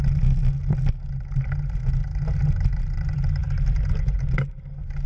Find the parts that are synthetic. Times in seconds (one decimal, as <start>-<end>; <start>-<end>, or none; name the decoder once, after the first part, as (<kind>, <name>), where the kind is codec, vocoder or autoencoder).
none